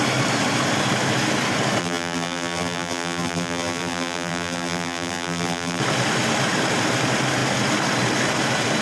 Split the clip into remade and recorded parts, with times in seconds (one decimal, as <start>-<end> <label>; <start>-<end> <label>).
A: 0.0-1.8 recorded; 1.8-5.8 remade; 5.8-8.8 recorded